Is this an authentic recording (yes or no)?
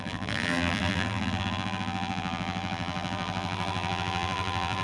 no